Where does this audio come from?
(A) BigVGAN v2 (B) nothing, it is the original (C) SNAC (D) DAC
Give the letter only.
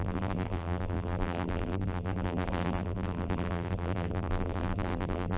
A